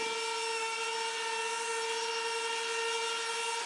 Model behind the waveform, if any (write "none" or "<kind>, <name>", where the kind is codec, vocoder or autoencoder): none